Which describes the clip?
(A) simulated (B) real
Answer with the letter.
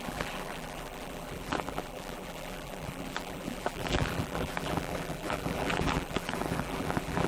A